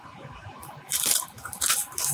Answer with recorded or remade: remade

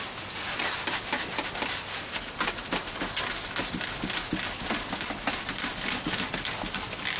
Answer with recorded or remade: recorded